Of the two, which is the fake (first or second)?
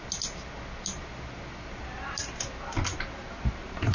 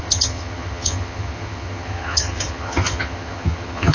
second